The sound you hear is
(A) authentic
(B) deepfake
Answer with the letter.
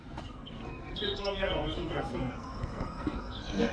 B